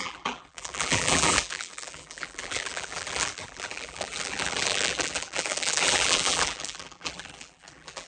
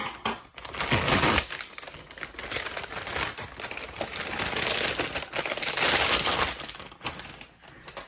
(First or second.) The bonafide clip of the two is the second